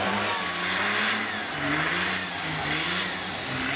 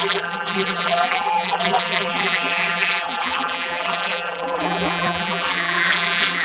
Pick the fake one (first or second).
second